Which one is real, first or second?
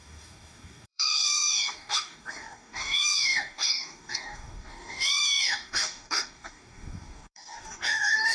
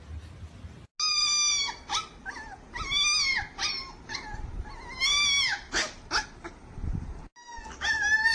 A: second